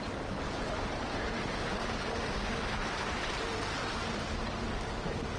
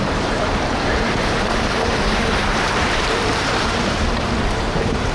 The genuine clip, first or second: first